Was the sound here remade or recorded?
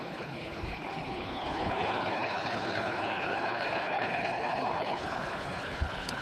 remade